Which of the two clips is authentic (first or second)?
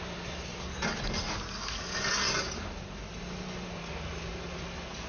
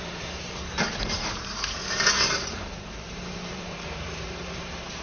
first